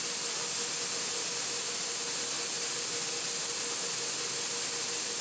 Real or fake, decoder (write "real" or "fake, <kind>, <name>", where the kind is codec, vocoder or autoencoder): real